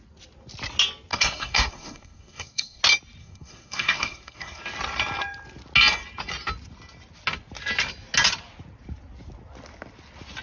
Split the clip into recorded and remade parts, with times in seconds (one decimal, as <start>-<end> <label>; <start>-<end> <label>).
0.0-1.1 recorded; 1.1-2.8 remade; 2.8-3.2 recorded; 3.2-4.6 remade; 4.6-10.4 recorded